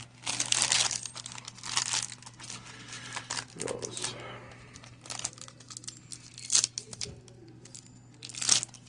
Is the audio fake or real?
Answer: real